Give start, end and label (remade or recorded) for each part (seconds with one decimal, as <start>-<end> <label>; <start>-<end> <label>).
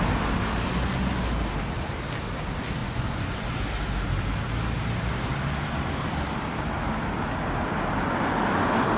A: 0.0-2.8 recorded; 2.8-3.6 remade; 3.6-9.0 recorded